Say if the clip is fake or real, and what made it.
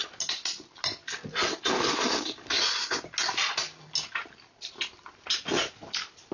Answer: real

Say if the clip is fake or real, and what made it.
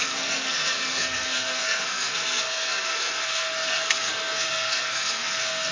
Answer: fake, codec, SNAC